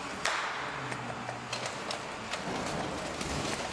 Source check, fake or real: real